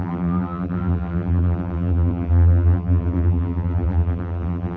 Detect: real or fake fake